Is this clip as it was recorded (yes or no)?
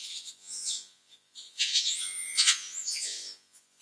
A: no